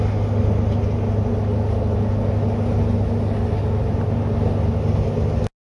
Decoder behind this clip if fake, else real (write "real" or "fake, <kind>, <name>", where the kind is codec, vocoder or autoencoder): real